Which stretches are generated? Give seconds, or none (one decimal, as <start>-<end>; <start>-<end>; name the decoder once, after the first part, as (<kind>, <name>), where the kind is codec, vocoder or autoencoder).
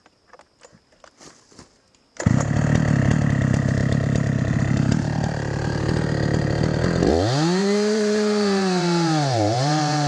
3.8-5.8 (vocoder, BigVGAN v2); 7.6-10.1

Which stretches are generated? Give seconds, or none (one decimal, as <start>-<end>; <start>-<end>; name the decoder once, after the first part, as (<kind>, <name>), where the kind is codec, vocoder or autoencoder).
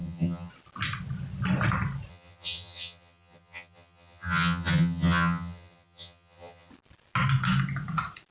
0.0-0.5 (vocoder, HiFi-GAN); 2.1-6.7